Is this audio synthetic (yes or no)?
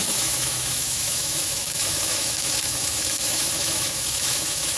yes